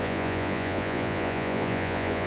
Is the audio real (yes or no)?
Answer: no